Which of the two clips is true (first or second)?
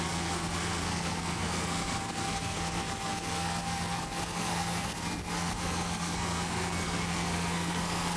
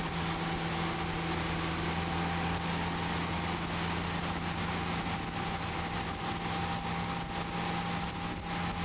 second